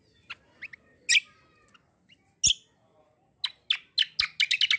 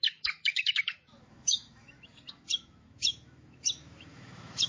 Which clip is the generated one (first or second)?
second